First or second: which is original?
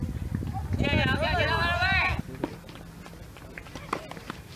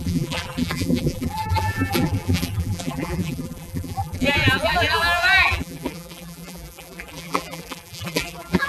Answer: first